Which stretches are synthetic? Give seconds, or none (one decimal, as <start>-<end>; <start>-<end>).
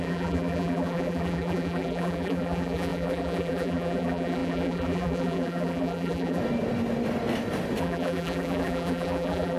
0.0-6.4; 7.8-9.6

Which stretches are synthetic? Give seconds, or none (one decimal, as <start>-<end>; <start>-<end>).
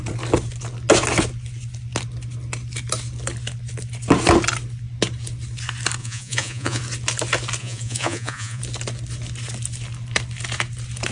6.0-6.8; 7.6-8.6